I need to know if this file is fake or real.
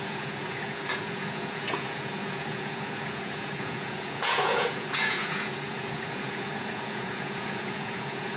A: fake